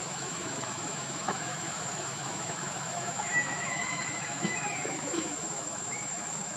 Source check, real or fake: fake